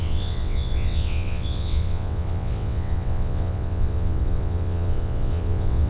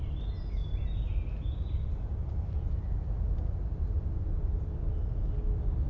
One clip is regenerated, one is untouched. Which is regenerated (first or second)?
first